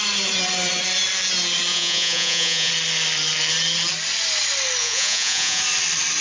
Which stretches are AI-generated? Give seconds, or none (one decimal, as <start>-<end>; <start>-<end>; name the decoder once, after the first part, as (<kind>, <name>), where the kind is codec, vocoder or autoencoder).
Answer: 1.7-2.7 (vocoder, Vocos); 4.8-5.6